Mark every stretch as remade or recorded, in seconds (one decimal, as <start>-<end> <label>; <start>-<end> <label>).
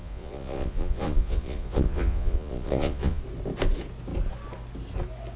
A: 0.0-3.2 remade; 3.2-5.4 recorded